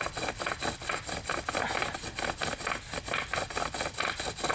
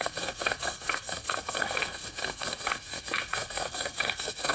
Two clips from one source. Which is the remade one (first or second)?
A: second